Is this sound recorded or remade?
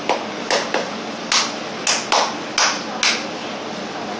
recorded